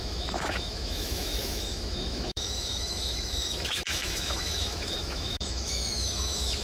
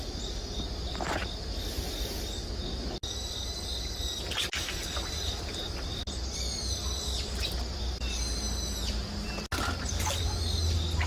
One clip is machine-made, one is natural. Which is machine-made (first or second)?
first